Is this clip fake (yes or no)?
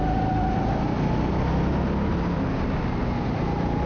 no